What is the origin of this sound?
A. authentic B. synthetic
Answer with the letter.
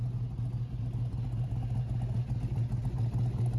A